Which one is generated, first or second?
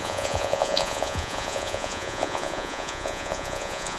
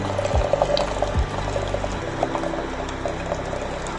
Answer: first